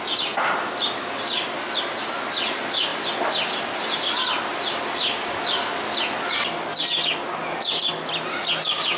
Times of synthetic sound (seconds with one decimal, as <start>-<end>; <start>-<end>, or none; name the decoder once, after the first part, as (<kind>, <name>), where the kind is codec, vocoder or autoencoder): none